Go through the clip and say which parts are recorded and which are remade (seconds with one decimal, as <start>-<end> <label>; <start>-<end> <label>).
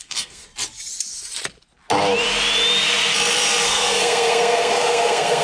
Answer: 0.0-0.4 remade; 0.4-3.6 recorded; 3.6-5.4 remade